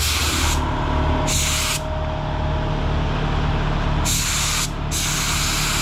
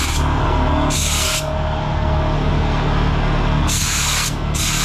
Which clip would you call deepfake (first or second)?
second